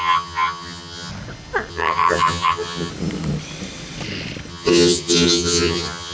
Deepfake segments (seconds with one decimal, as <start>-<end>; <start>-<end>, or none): 0.0-1.1; 1.7-2.9; 4.5-6.1